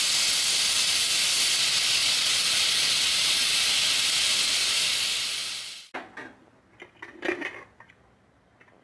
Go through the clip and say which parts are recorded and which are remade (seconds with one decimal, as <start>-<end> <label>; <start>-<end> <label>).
0.0-2.0 recorded; 2.0-3.8 remade; 3.8-8.8 recorded

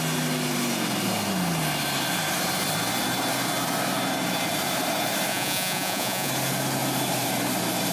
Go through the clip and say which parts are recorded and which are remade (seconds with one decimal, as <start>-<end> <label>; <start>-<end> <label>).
0.0-5.3 recorded; 5.3-6.3 remade; 6.3-7.9 recorded

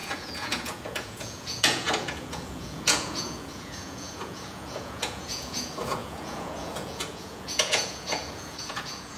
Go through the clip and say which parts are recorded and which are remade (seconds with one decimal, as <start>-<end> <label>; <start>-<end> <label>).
0.0-9.2 remade